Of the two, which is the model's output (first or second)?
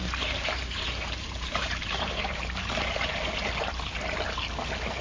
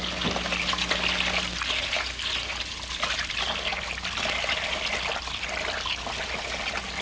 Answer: first